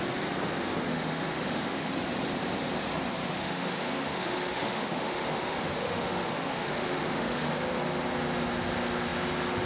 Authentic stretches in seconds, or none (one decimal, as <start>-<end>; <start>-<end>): 0.0-0.9; 1.9-3.2; 7.5-9.7

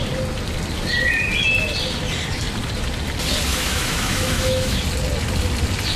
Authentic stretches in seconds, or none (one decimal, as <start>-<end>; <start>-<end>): 0.0-3.5; 4.8-6.0

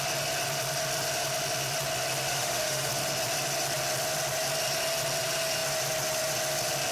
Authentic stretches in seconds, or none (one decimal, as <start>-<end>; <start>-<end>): 0.0-2.3; 2.9-6.9

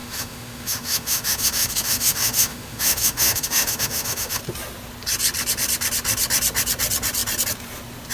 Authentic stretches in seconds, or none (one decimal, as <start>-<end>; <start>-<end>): 4.4-8.1

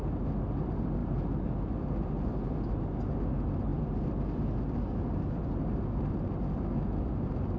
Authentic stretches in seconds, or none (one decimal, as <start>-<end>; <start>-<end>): 0.0-7.6

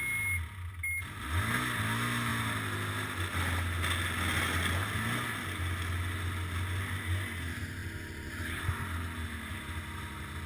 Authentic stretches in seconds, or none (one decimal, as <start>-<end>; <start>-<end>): 0.0-10.5

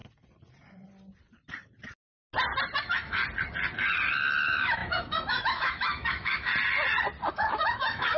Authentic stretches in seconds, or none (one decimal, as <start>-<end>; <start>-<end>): 0.0-2.8; 3.2-4.1; 6.5-7.3